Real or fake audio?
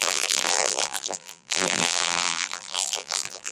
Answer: fake